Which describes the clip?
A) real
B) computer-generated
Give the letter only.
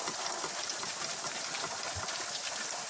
A